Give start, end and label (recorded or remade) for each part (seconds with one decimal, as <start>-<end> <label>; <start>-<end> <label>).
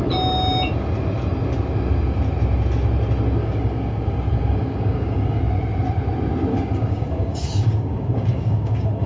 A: 0.0-3.4 recorded; 3.4-5.4 remade; 5.4-6.5 recorded; 6.5-9.1 remade